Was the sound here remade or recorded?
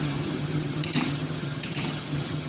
remade